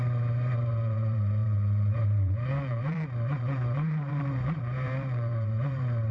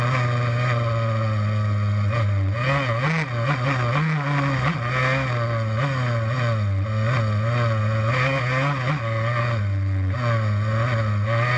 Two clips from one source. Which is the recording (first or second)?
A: second